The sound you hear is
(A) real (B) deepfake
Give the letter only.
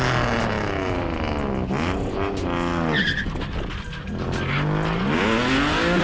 A